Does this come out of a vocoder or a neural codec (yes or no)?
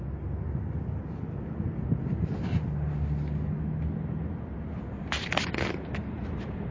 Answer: no